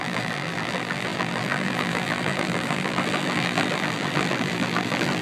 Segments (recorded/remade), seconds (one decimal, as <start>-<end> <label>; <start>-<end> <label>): 0.0-5.2 remade